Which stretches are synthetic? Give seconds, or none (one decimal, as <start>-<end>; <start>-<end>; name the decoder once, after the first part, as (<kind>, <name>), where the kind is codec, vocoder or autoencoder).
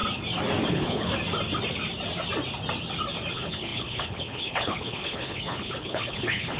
0.7-1.1 (codec, HILCodec); 3.3-6.6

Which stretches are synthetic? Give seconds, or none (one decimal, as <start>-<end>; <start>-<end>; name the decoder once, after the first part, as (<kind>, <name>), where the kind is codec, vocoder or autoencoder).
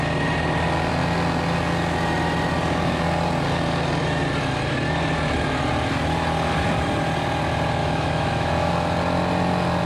7.8-8.7 (autoencoder, DAC-VAE)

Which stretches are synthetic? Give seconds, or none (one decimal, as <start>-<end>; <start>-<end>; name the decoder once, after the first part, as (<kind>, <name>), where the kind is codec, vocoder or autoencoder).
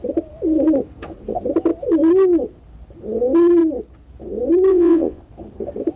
4.7-5.2 (vocoder, Vocos)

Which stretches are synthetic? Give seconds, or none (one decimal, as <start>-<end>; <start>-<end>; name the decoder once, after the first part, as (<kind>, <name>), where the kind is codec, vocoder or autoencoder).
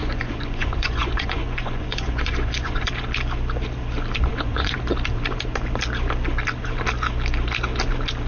0.0-2.9 (vocoder, Vocos); 4.3-4.8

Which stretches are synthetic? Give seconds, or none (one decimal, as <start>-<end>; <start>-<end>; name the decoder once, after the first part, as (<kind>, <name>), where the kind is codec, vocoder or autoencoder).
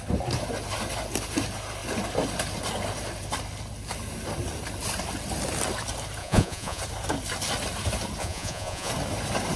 6.2-6.8 (vocoder, Vocos); 8.2-8.9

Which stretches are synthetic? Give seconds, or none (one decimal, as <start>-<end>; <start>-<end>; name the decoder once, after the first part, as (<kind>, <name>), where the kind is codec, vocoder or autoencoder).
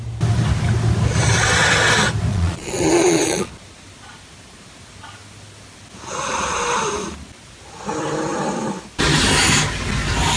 2.3-3.5 (vocoder, Vocos)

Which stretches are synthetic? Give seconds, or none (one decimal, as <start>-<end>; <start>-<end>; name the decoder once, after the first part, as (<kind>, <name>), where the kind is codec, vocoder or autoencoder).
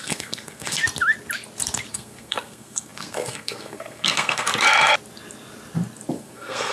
0.0-0.8 (codec, SNAC); 1.9-4.5; 6.1-6.7